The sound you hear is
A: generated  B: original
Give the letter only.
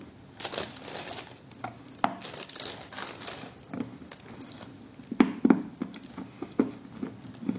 B